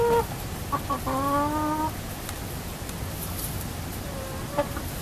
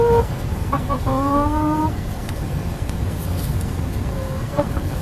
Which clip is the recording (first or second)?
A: first